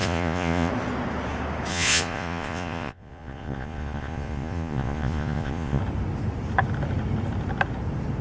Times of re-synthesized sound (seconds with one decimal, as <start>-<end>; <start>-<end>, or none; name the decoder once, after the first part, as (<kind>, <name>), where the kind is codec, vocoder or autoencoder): 0.0-0.7 (vocoder, Vocos); 1.7-5.8